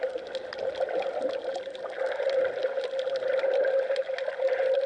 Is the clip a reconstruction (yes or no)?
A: no